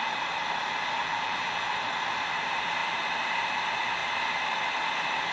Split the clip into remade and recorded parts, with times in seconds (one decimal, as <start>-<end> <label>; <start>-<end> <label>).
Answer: 0.0-1.0 recorded; 1.0-1.7 remade; 1.7-5.3 recorded